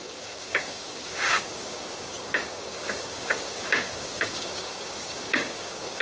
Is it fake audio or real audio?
fake